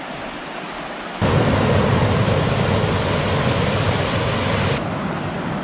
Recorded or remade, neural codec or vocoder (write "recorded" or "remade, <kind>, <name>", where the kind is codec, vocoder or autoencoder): recorded